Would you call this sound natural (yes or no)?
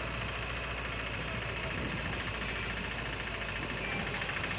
yes